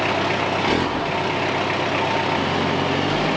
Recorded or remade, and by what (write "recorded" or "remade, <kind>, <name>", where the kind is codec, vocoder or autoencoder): recorded